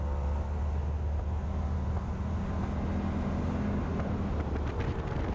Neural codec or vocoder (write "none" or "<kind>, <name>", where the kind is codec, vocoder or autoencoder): none